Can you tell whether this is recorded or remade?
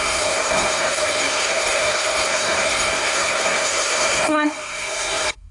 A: remade